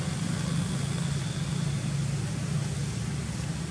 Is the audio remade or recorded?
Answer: recorded